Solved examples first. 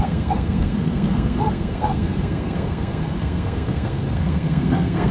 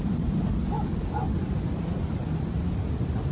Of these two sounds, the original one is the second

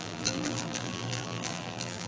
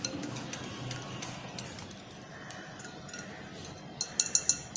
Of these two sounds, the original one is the second